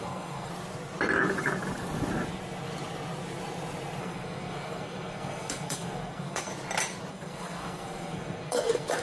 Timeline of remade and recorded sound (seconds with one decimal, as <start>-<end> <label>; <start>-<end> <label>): 0.0-0.5 remade; 0.5-4.0 recorded; 4.0-6.5 remade; 6.5-7.1 recorded; 7.1-9.0 remade